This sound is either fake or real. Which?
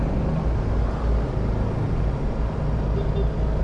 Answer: real